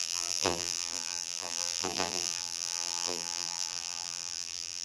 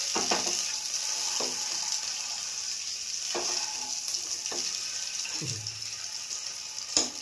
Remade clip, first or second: first